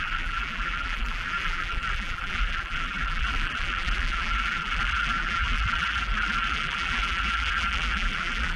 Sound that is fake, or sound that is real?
fake